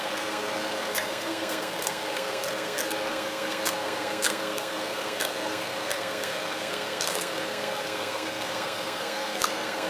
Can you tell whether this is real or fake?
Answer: fake